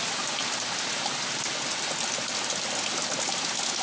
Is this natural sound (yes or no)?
yes